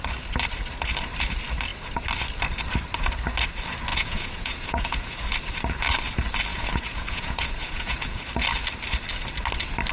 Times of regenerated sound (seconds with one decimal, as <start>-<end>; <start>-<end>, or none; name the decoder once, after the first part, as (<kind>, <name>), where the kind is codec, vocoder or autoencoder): 3.9-5.2 (vocoder, Vocos); 6.5-8.2